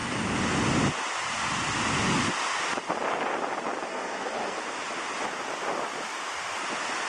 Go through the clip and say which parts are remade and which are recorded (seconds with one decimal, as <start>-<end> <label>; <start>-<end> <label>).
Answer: 0.0-3.9 recorded; 3.9-4.6 remade; 4.6-7.1 recorded